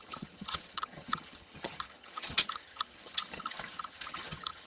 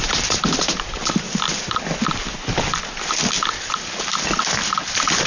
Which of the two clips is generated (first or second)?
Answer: first